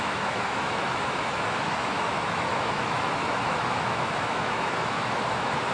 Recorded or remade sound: remade